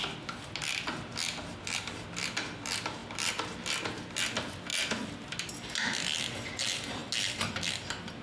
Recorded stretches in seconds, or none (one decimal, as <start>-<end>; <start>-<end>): 0.0-8.2